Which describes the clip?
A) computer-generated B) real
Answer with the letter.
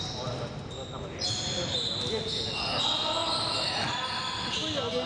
B